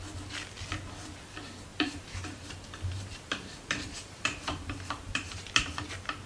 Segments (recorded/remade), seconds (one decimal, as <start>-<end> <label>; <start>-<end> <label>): 0.0-1.7 recorded; 1.7-5.5 remade; 5.5-6.3 recorded